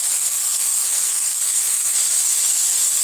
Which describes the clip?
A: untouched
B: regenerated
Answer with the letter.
B